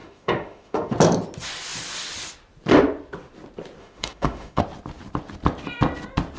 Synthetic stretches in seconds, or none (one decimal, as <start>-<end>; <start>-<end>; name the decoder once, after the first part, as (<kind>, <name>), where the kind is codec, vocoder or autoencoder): 0.0-0.9 (autoencoder, DAC-VAE); 3.8-4.6